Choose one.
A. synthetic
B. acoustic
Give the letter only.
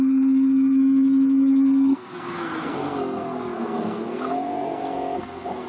A